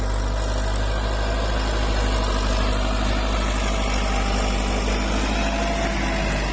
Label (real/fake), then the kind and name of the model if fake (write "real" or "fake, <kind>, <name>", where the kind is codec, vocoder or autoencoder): real